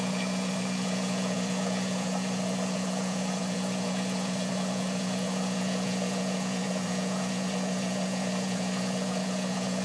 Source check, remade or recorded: remade